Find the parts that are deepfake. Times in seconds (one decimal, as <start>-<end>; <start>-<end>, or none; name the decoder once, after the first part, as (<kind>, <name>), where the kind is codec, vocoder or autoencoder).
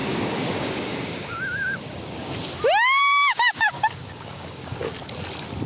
0.0-2.3 (codec, DAC); 3.0-4.9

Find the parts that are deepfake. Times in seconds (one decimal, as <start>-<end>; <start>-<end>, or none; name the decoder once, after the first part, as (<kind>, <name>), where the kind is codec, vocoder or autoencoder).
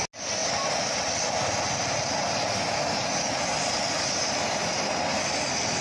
none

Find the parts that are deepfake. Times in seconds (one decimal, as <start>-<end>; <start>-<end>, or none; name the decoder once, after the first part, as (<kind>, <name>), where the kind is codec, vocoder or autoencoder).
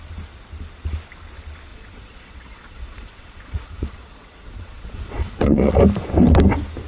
1.7-5.8 (vocoder, Vocos)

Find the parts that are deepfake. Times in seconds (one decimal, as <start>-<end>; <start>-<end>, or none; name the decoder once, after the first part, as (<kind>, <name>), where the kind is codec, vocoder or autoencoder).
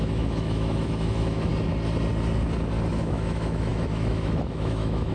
0.0-1.5 (autoencoder, DAC-VAE); 2.9-5.1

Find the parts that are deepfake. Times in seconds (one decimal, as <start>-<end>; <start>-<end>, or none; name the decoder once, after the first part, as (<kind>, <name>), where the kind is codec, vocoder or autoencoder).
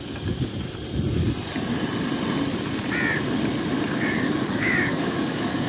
0.0-0.5 (codec, DAC); 3.9-5.7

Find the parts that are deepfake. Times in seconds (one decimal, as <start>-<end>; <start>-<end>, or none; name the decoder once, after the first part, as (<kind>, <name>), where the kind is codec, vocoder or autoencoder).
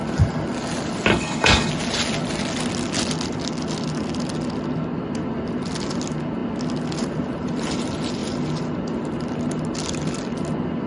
1.1-1.7 (codec, HILCodec)